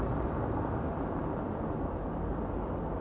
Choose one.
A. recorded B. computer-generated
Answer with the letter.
A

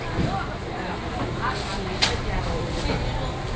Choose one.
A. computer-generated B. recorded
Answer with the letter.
B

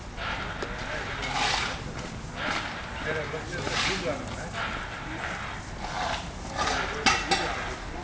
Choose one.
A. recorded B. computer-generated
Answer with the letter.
A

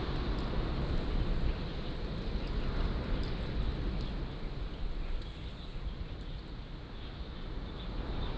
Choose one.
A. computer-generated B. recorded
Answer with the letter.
B